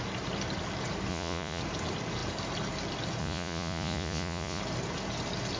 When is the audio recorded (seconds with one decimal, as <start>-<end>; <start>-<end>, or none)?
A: 0.0-1.1; 1.6-3.2; 4.6-5.6